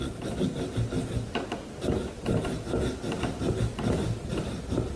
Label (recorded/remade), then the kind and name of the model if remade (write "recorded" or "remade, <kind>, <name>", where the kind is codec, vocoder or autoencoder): recorded